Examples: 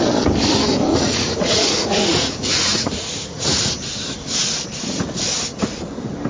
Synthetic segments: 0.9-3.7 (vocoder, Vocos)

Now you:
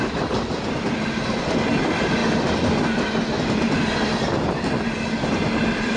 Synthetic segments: 0.0-2.2 (vocoder, BigVGAN v2); 4.9-6.0

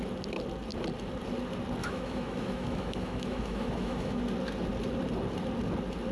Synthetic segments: 1.8-4.2 (autoencoder, DAC-VAE)

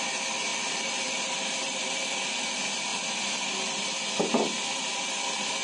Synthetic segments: none

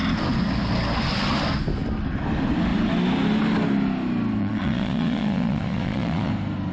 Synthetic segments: 4.4-6.3 (vocoder, Vocos)

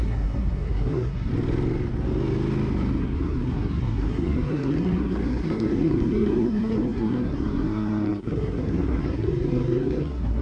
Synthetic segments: 0.0-1.3 (codec, SNAC); 3.0-10.4

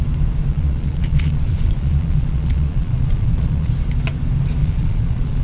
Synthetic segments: 0.5-3.7 (vocoder, Vocos); 4.6-5.4

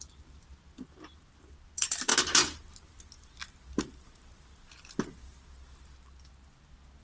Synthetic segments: none